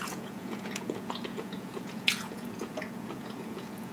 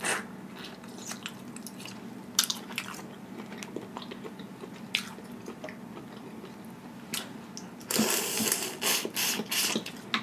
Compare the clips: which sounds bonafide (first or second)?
second